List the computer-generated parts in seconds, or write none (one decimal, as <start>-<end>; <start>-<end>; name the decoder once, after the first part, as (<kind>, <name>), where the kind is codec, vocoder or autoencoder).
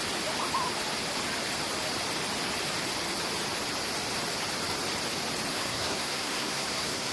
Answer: 5.5-7.1 (codec, SNAC)